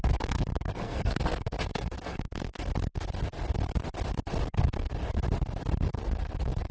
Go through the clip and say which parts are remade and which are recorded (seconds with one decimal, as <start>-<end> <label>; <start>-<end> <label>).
0.0-2.5 remade; 2.5-4.5 recorded; 4.5-4.9 remade; 4.9-5.9 recorded; 5.9-6.7 remade